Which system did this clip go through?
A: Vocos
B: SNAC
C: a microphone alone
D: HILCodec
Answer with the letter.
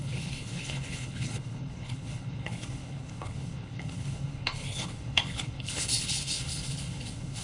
D